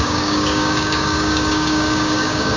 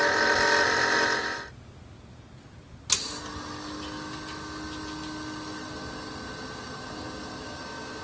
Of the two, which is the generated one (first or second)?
first